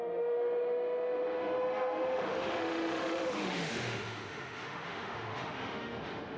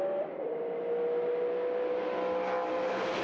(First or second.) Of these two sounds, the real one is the second